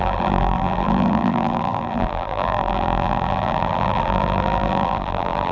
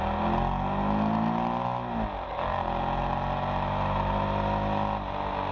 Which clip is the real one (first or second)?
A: second